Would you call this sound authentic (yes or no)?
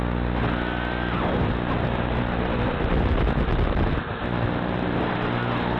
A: yes